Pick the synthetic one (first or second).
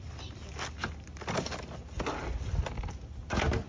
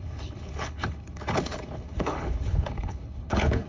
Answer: second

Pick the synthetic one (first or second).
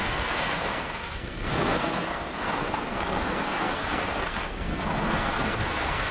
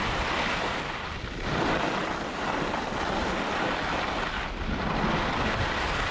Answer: first